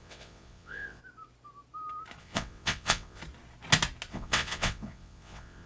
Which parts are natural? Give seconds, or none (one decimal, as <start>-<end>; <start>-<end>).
1.0-2.2; 3.2-4.1

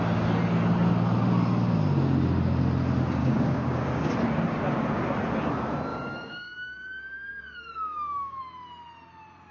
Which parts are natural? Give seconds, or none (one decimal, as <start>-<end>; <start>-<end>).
0.0-3.2; 4.1-5.9; 8.4-9.5

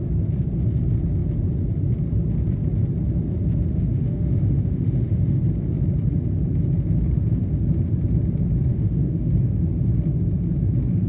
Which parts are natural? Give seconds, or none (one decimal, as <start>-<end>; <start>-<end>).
0.0-3.7; 5.4-8.7; 9.3-11.1

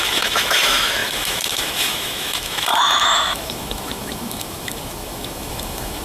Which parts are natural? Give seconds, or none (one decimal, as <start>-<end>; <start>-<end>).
none

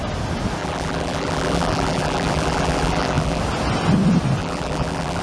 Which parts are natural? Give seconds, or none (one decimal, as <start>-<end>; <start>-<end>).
0.0-0.6; 3.4-4.4